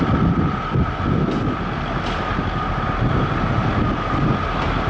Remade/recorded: recorded